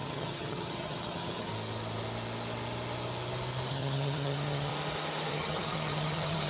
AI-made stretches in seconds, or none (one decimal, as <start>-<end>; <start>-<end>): 0.0-1.5; 3.7-4.7; 5.3-6.5